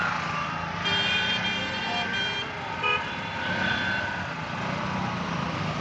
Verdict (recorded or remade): recorded